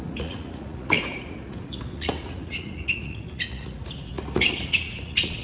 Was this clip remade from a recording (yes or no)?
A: yes